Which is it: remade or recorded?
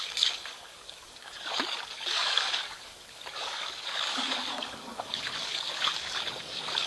remade